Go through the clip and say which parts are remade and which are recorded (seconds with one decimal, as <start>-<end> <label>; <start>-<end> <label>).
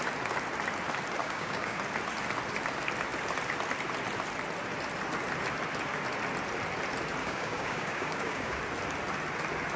0.0-1.2 recorded; 1.2-1.8 remade; 1.8-7.2 recorded; 7.2-8.6 remade; 8.6-9.8 recorded